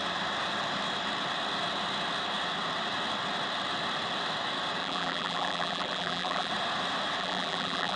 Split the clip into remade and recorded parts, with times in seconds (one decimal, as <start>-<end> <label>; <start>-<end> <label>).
0.0-4.8 recorded; 4.8-6.5 remade; 6.5-7.2 recorded; 7.2-8.0 remade